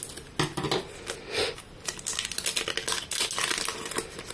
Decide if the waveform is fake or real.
real